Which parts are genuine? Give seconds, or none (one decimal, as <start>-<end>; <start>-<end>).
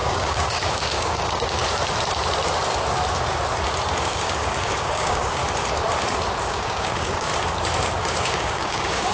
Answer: 1.6-4.0; 5.4-6.4; 7.3-8.0